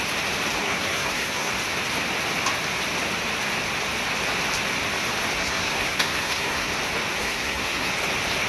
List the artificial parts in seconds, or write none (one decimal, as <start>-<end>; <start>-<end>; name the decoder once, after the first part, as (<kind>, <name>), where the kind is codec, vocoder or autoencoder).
0.6-1.5 (codec, SNAC); 5.4-6.7; 7.2-7.9